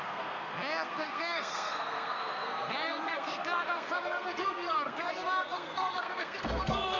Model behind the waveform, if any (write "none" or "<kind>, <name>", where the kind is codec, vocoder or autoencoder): codec, SNAC